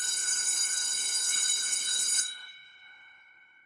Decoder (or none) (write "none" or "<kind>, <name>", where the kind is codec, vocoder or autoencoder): codec, HILCodec